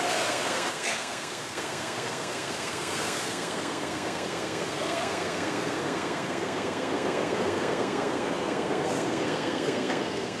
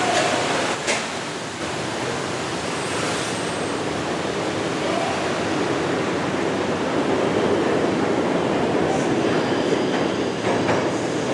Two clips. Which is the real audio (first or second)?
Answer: second